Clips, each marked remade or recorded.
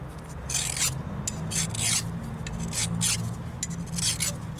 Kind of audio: recorded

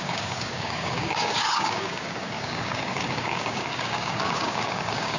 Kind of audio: remade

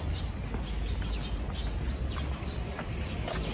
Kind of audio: recorded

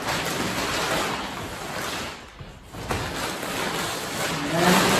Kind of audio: recorded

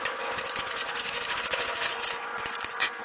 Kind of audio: remade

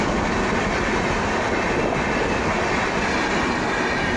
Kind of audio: recorded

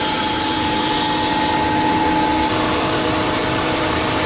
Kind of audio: remade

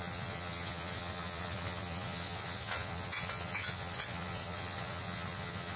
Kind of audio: remade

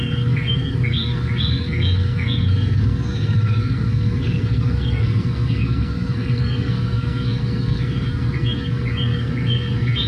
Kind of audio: remade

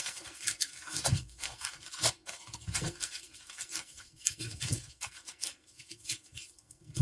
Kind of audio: remade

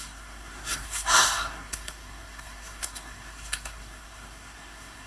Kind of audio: remade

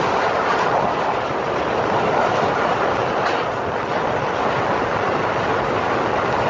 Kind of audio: recorded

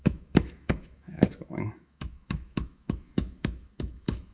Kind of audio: remade